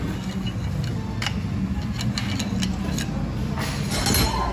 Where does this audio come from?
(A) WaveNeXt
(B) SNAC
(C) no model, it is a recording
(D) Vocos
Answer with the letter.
C